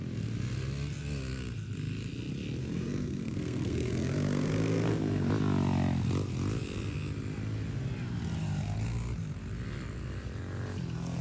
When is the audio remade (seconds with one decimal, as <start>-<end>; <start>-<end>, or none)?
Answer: 2.6-5.3